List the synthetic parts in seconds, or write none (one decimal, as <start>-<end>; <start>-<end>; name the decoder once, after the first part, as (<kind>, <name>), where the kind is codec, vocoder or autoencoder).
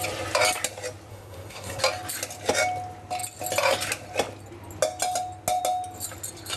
1.1-1.8 (codec, SNAC)